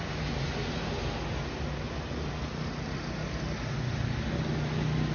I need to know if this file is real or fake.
real